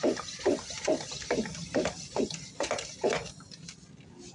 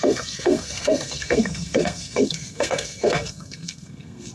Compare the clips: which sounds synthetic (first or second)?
second